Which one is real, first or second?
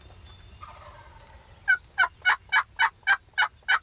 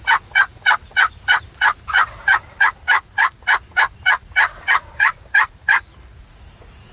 first